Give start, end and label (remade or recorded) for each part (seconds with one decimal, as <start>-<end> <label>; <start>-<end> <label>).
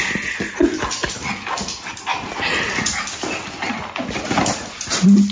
0.0-5.3 recorded